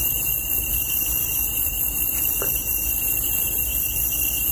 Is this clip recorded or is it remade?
remade